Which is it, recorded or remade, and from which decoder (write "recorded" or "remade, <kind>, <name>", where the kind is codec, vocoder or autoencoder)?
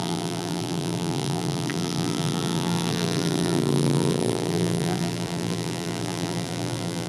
remade, vocoder, BigVGAN v2